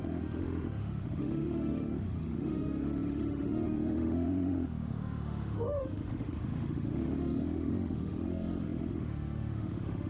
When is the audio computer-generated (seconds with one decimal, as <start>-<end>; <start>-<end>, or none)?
0.0-10.1